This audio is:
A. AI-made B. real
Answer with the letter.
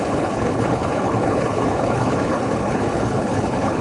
A